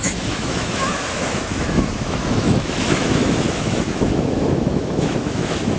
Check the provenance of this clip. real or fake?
fake